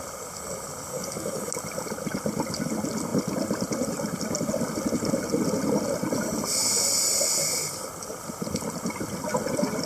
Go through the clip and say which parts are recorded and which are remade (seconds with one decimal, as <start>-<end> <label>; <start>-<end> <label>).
0.0-0.9 recorded; 0.9-1.5 remade; 1.5-9.9 recorded